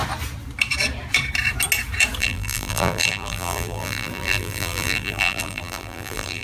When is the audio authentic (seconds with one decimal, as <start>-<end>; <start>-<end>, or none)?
0.0-2.2

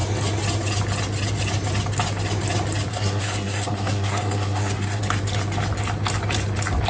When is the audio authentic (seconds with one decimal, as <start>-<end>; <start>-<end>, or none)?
0.0-2.9; 5.0-6.9

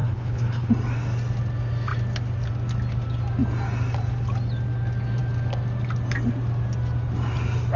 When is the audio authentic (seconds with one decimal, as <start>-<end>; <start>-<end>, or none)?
0.7-7.8

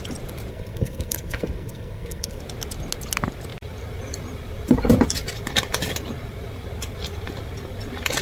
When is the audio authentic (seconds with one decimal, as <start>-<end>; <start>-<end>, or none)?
0.0-0.5; 2.4-8.2

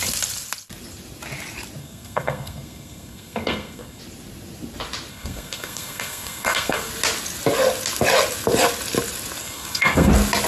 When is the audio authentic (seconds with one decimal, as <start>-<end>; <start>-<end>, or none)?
0.0-1.8; 4.0-5.1; 6.9-9.4; 10.1-10.5

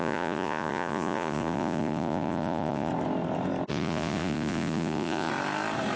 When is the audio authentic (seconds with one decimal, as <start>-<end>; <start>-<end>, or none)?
2.9-3.7; 5.3-6.0

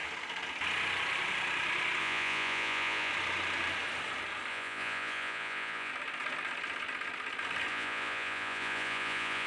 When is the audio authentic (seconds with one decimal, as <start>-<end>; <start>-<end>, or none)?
0.0-2.0; 3.1-4.5; 5.9-7.7